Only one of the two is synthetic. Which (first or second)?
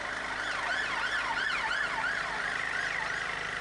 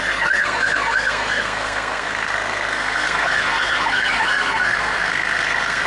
second